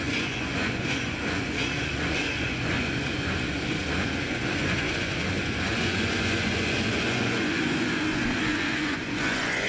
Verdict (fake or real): fake